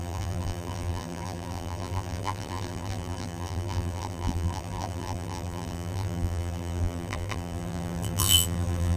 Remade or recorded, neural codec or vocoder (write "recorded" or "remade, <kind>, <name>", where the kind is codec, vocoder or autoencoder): remade, vocoder, BigVGAN v2